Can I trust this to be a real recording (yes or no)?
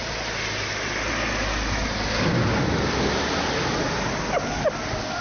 yes